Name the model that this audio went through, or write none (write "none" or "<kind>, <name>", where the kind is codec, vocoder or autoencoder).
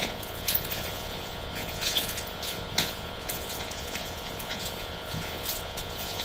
vocoder, Vocos